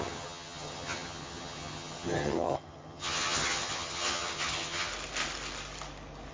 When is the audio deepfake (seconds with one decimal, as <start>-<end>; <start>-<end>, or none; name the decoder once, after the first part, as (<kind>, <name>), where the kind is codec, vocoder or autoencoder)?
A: 0.0-4.9 (vocoder, HiFi-GAN)